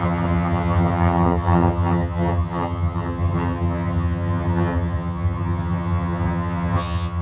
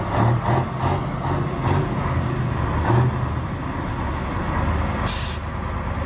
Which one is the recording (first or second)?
second